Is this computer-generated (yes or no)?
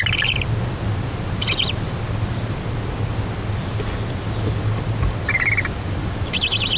no